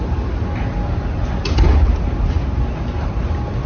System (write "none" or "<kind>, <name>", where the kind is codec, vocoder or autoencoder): none